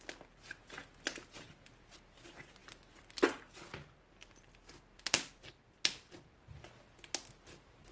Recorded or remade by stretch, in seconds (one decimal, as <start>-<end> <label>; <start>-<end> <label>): 0.0-7.9 recorded